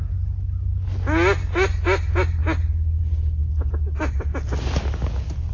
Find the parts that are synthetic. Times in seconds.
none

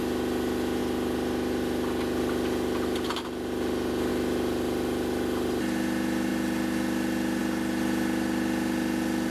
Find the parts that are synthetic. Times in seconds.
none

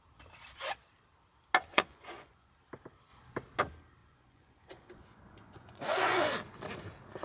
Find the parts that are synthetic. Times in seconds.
1.7-2.5 (vocoder, Vocos); 4.0-6.3

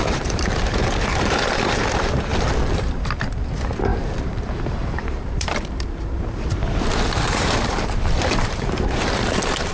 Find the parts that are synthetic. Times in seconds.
0.0-9.7 (vocoder, BigVGAN v2)

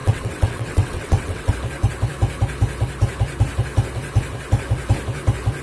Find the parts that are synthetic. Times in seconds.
0.0-1.5 (vocoder, WaveNeXt)